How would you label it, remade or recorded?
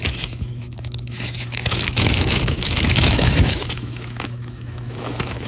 remade